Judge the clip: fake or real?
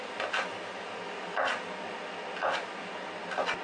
real